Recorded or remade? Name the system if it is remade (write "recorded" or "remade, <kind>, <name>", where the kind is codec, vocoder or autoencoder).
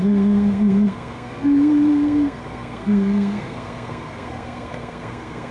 remade, codec, SNAC